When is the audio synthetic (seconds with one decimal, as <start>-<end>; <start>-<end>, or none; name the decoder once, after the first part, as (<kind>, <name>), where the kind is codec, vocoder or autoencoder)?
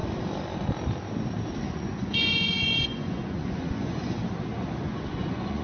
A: 1.6-4.2 (vocoder, Vocos); 4.8-5.6